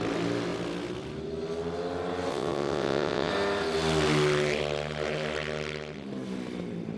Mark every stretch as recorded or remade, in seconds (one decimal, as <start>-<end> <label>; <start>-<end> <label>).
0.0-2.3 recorded; 2.3-3.3 remade; 3.3-7.0 recorded